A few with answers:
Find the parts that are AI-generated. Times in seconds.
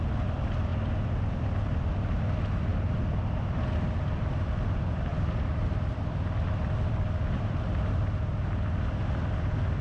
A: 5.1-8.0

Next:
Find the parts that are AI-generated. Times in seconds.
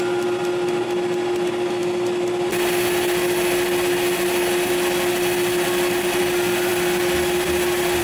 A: none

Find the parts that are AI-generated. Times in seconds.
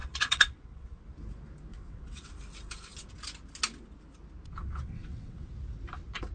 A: 0.0-1.0; 1.7-2.3; 4.6-5.5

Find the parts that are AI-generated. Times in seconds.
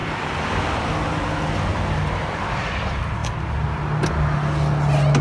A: 0.0-0.9; 1.7-2.4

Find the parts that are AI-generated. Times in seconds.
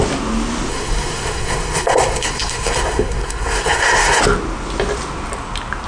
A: 0.7-4.2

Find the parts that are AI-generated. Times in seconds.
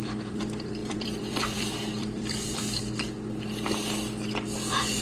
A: 0.0-2.6; 4.6-5.0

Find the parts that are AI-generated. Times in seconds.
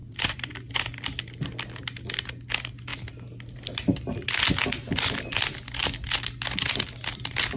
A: 0.0-0.7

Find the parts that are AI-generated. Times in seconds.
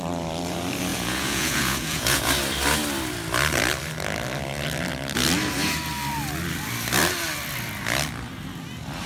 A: 0.9-2.3